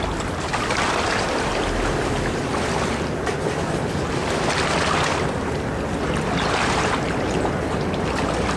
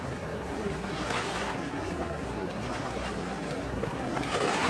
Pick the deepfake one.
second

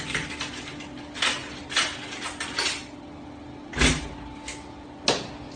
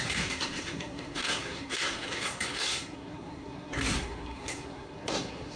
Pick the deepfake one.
second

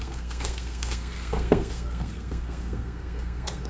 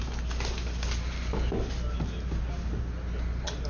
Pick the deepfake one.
first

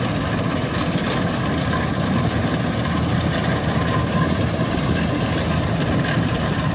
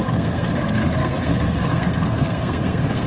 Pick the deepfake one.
second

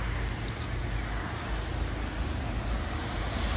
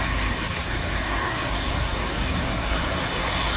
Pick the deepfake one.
second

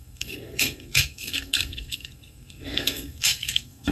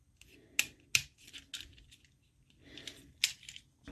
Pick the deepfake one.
first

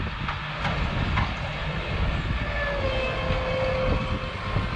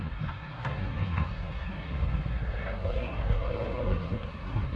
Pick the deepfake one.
second